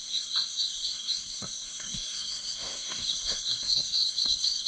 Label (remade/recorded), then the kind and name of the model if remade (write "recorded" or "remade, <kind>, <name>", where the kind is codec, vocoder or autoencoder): remade, codec, SNAC